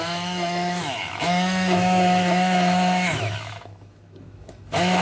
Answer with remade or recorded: remade